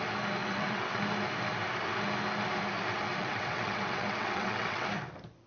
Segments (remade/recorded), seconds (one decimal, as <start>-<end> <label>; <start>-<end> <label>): 0.0-0.4 recorded; 0.4-1.0 remade; 1.0-3.1 recorded; 3.1-4.9 remade; 4.9-5.5 recorded